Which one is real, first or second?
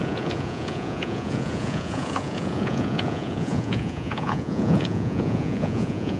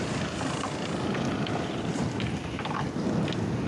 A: second